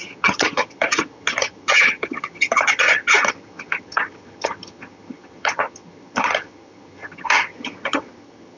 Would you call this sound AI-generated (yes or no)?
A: yes